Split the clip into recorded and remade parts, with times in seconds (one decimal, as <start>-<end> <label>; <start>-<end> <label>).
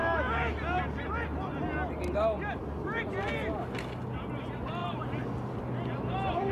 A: 0.0-4.8 recorded; 4.8-6.5 remade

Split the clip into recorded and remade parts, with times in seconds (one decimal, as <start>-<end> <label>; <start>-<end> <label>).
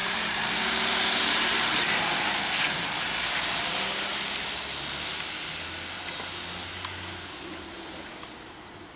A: 0.0-1.8 remade; 1.8-9.0 recorded